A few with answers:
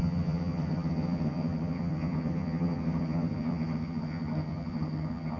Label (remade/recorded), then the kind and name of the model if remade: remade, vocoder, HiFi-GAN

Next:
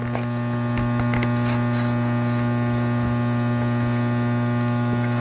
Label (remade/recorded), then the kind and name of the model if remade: recorded